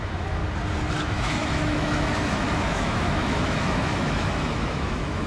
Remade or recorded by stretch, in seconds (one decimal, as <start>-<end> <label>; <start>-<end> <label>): 0.0-0.4 remade; 0.4-0.9 recorded; 0.9-5.3 remade